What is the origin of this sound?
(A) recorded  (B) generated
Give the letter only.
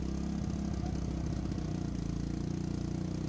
A